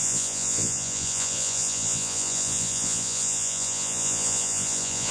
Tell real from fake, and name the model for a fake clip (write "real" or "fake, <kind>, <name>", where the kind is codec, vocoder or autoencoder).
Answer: fake, vocoder, Vocos